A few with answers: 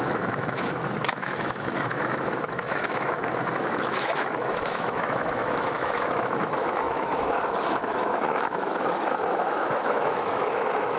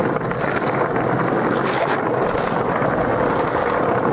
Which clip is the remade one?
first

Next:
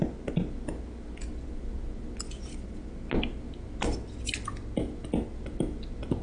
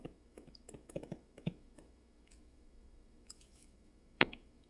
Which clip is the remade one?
second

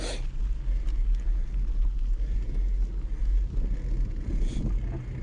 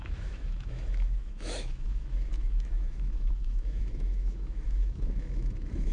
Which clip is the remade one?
second